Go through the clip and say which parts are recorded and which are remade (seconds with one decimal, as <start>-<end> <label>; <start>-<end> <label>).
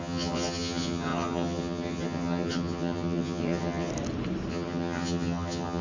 0.0-3.9 remade; 3.9-4.5 recorded; 4.5-5.8 remade